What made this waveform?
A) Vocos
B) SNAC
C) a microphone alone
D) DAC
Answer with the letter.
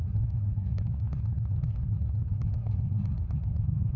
B